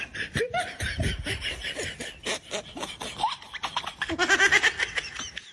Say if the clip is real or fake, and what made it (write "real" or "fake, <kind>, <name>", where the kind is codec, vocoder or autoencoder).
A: fake, vocoder, BigVGAN v2